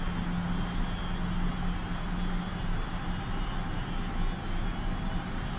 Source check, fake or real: real